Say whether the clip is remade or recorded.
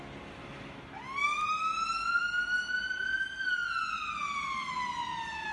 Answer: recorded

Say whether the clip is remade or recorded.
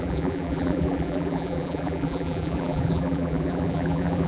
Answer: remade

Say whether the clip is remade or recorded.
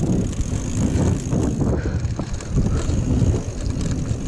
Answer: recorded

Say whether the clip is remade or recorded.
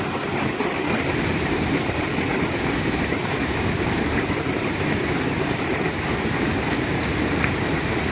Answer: remade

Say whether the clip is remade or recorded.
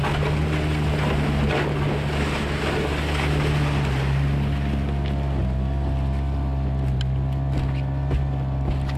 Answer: recorded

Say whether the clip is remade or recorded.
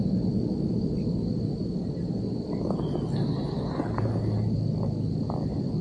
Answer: recorded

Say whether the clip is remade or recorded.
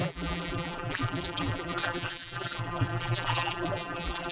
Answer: remade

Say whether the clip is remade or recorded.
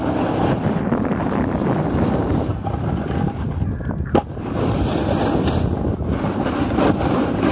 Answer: remade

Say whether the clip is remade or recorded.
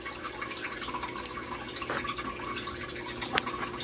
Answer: recorded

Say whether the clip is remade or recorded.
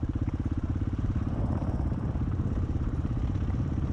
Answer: remade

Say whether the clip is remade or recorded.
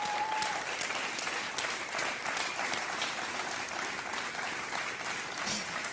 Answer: remade